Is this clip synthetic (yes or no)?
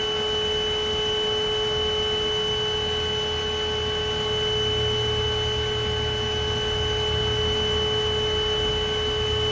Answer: no